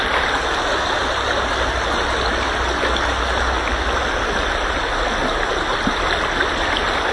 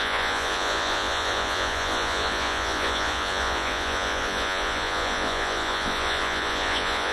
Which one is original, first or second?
first